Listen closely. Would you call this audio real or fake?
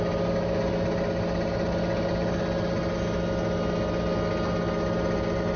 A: real